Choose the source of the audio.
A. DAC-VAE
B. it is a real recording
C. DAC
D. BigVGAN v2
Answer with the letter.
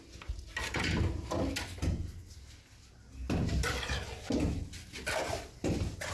B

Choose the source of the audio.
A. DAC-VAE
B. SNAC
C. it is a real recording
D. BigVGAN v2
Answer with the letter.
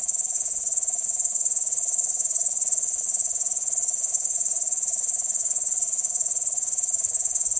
A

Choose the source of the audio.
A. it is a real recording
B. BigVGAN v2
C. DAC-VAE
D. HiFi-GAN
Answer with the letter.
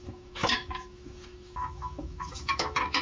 C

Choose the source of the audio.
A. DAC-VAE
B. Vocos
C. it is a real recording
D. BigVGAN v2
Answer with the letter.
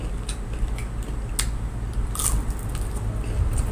C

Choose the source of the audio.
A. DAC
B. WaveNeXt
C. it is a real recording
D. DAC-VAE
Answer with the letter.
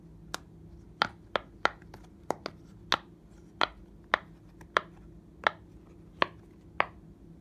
C